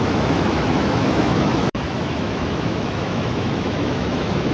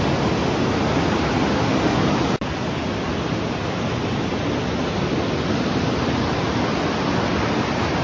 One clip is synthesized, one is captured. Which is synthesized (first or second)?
first